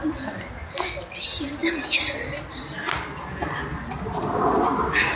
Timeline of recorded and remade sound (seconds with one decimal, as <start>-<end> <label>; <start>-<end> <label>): 0.0-5.2 recorded